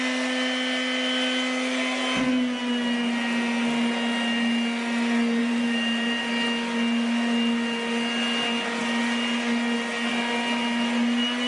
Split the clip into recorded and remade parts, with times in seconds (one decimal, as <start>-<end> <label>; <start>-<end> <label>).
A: 0.0-5.4 recorded; 5.4-6.2 remade; 6.2-11.5 recorded